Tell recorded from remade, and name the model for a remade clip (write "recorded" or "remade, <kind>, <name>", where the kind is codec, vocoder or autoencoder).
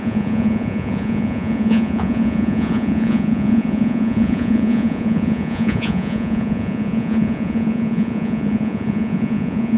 remade, vocoder, Vocos